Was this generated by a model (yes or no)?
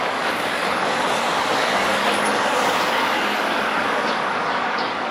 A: yes